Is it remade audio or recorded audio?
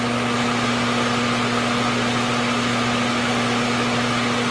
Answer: recorded